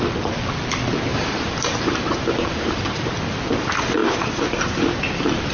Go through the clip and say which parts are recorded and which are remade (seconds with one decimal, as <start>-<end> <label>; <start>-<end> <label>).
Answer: 0.0-1.1 recorded; 1.1-3.0 remade; 3.0-5.5 recorded